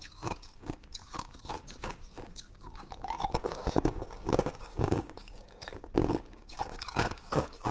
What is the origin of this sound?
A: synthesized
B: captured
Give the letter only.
A